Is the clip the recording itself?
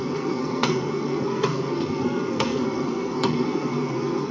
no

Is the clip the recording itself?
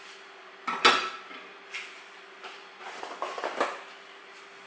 yes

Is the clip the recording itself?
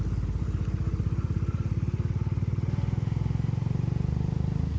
yes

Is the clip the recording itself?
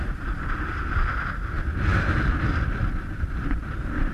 yes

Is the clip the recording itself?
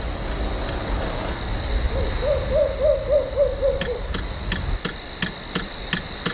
yes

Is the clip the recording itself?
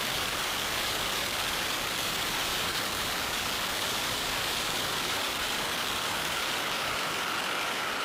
no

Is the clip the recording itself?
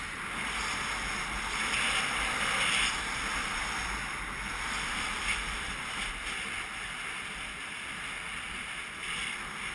yes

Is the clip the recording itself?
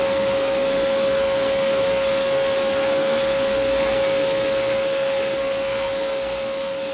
no